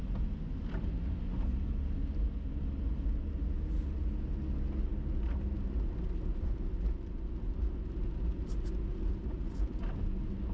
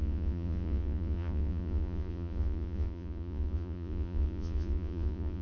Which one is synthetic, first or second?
second